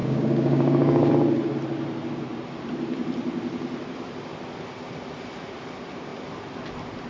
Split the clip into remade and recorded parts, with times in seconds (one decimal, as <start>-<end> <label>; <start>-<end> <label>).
0.0-1.1 remade; 1.1-7.1 recorded